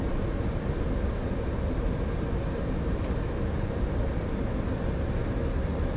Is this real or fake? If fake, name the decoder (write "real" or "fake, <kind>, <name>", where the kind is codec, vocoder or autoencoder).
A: real